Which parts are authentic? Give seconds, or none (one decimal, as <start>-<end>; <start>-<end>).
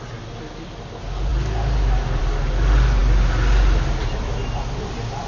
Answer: 0.0-5.3